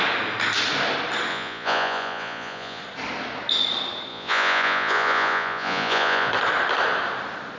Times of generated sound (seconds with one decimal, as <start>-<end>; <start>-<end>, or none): 1.3-2.8; 4.1-6.3